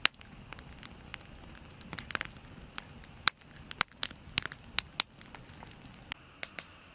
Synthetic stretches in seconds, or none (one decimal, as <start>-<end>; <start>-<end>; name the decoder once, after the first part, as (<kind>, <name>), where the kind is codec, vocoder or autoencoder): none